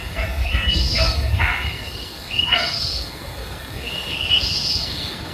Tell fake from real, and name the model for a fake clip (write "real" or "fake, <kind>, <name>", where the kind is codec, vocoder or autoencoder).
fake, codec, SNAC